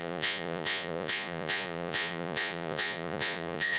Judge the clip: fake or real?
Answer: fake